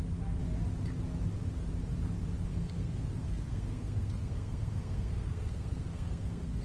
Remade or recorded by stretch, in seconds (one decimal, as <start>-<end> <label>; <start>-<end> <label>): 0.0-2.5 recorded; 2.5-6.6 remade